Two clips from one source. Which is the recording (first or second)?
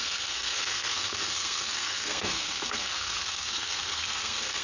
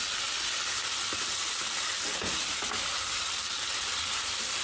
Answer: second